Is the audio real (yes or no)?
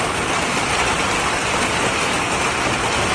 yes